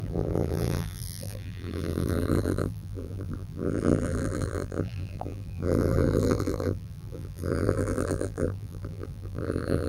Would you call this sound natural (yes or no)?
no